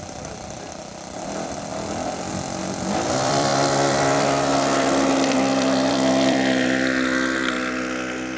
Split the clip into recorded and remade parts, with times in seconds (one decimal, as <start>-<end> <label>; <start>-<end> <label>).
0.0-1.7 remade; 1.7-2.3 recorded; 2.3-8.4 remade